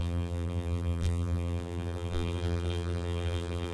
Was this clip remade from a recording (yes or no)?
yes